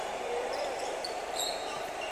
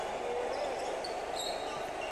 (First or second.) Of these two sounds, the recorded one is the second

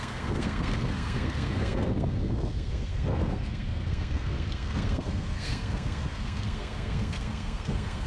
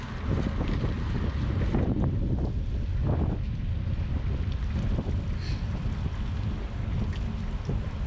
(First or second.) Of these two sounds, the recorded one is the second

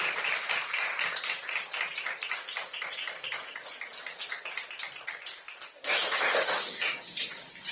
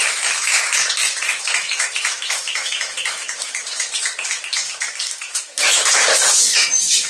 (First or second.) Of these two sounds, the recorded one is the first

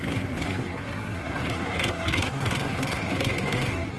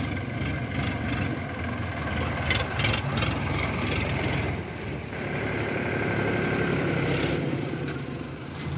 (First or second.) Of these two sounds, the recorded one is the second